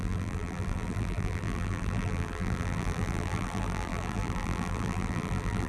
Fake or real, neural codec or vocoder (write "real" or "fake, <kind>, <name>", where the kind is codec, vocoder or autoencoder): fake, vocoder, BigVGAN v2